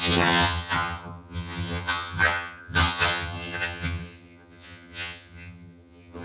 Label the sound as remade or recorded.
remade